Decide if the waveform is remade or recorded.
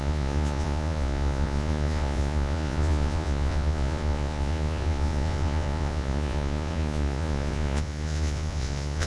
remade